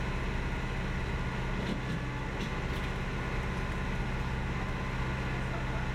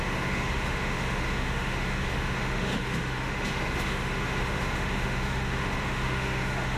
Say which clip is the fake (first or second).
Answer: second